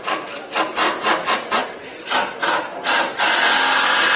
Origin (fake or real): real